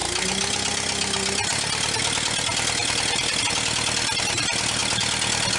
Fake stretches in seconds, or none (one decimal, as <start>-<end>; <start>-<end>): none